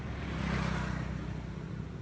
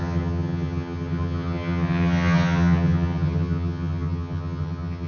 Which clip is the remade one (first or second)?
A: second